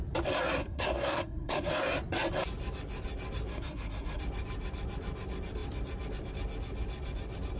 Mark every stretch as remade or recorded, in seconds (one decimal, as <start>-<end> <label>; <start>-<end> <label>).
0.0-0.6 recorded; 0.6-1.7 remade; 1.7-3.5 recorded; 3.5-4.2 remade; 4.2-7.6 recorded